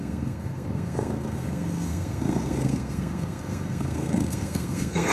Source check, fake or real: fake